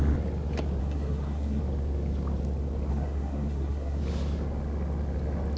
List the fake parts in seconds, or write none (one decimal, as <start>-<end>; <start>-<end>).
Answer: 0.8-1.6; 2.9-4.0